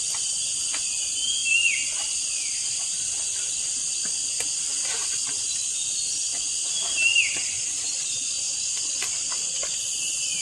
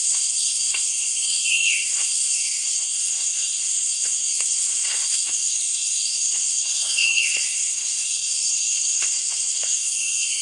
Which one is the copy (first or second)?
second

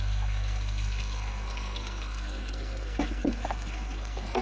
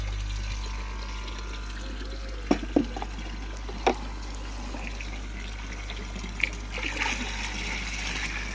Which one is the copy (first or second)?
first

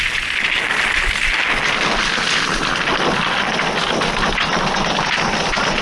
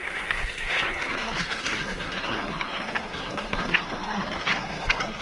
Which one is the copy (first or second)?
second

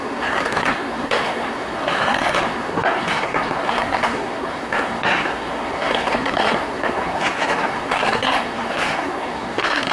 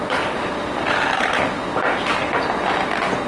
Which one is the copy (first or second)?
first